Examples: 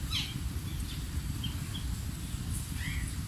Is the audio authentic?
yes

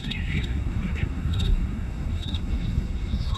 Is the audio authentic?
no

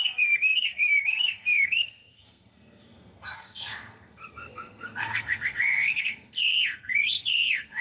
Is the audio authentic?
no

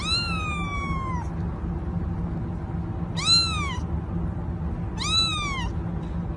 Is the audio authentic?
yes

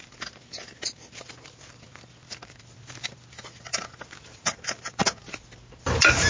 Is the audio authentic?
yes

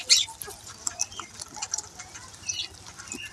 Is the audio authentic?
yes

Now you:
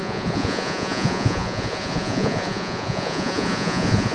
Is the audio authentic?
no